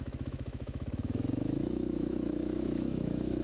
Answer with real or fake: fake